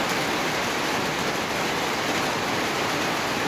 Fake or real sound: real